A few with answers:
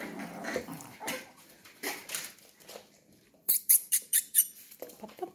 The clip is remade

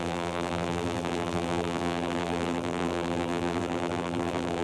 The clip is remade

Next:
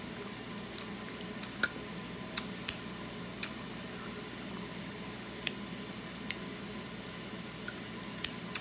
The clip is recorded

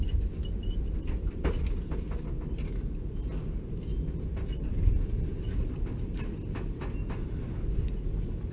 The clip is recorded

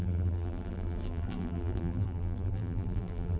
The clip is remade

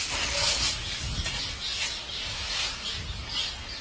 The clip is recorded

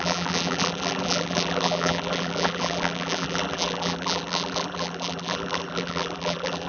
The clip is remade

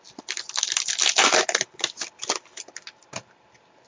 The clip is recorded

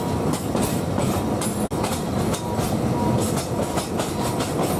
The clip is recorded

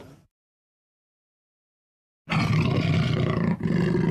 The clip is recorded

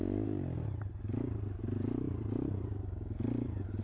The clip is recorded